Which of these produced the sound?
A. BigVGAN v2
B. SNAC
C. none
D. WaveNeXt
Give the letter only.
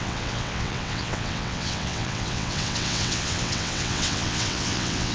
D